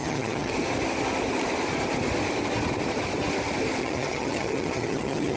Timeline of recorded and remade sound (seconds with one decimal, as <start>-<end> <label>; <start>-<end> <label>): 0.0-0.5 remade; 0.5-3.8 recorded; 3.8-5.4 remade